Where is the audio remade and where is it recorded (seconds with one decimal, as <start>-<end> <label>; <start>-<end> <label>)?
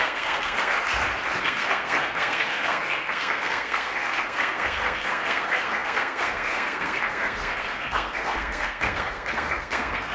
0.0-0.9 remade; 0.9-1.4 recorded; 1.4-10.1 remade